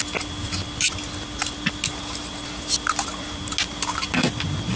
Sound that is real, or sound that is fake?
real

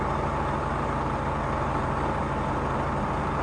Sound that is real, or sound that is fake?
real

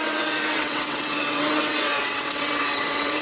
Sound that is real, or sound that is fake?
fake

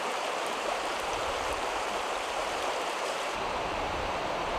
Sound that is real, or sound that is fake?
fake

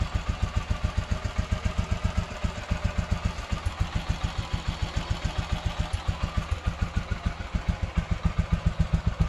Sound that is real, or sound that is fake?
real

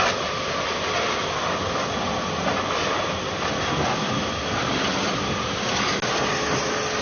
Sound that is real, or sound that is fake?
real